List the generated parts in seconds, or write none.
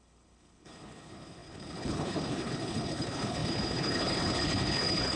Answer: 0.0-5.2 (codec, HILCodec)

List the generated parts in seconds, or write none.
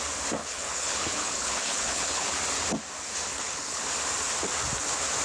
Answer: 0.4-2.4 (codec, HILCodec); 3.3-3.8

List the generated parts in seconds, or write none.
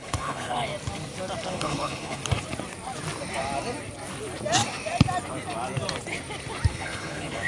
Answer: 0.0-0.7 (codec, HILCodec); 1.5-2.2; 6.7-7.5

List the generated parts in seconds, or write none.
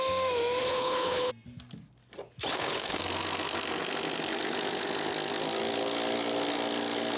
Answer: 0.6-1.3 (codec, HILCodec); 2.5-3.0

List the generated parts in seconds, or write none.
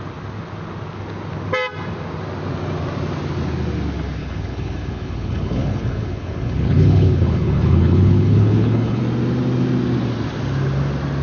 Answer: 4.2-9.0 (codec, HILCodec)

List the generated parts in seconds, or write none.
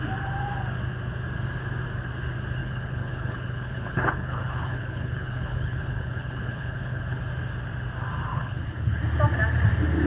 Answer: 2.6-7.2 (codec, HILCodec); 8.3-9.0